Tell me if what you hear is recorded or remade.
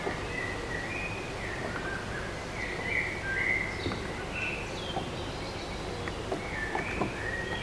recorded